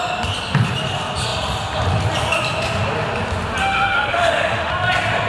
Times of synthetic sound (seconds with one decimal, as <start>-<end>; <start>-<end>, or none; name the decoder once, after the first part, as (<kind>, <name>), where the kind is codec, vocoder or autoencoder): 3.6-4.7 (autoencoder, DAC-VAE)